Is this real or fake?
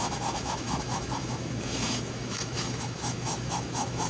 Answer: fake